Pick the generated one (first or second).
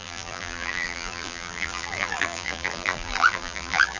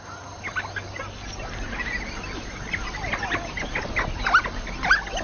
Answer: first